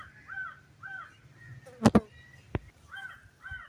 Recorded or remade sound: recorded